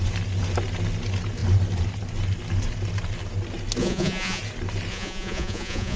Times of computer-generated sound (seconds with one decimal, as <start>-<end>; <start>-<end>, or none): 3.8-4.4; 4.9-6.0